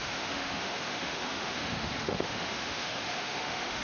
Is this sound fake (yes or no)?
yes